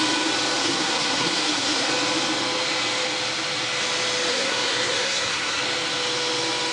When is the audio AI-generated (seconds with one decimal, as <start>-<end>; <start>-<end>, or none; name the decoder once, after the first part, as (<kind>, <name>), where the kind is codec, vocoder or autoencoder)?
0.6-1.9 (codec, SNAC); 4.3-5.6